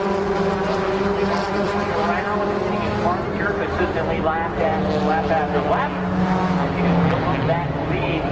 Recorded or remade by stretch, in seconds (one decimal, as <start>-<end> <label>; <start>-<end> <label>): 0.0-1.5 recorded; 1.5-2.7 remade; 2.7-8.3 recorded